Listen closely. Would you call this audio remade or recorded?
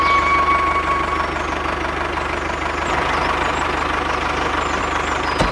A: recorded